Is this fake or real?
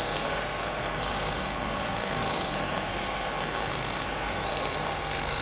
fake